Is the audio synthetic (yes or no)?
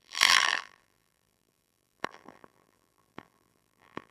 yes